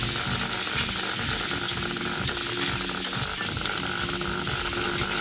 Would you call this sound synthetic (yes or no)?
no